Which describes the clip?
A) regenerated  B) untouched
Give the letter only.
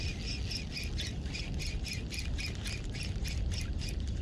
B